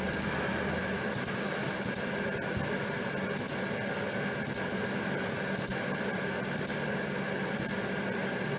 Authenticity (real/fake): real